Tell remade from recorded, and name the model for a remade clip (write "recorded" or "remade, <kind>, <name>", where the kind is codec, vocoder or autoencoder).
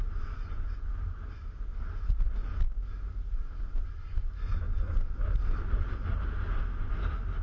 recorded